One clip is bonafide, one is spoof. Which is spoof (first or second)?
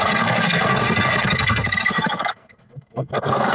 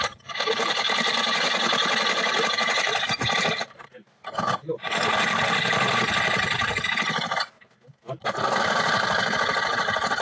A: first